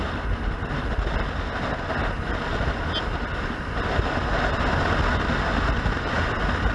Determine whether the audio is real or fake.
real